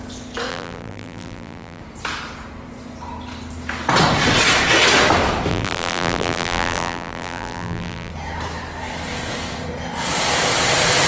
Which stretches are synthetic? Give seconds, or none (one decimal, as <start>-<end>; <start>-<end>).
0.5-1.8; 5.5-8.1

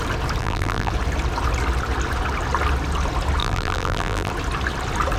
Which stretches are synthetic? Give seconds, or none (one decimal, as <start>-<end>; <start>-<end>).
0.4-0.9; 3.4-4.3